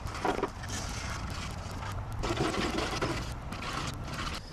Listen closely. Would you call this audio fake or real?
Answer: real